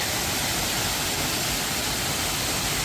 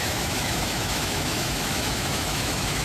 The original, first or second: first